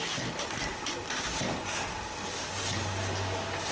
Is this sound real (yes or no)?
yes